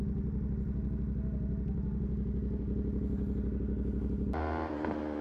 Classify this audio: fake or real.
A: real